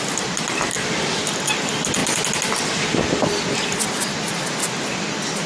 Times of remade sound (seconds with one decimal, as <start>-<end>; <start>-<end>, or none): none